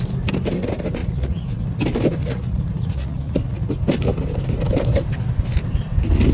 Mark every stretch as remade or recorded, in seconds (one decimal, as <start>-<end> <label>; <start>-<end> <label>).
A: 0.0-1.0 recorded; 1.0-1.6 remade; 1.6-2.2 recorded; 2.2-3.7 remade; 3.7-6.3 recorded